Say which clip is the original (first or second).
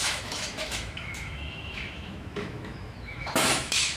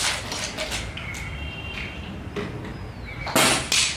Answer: second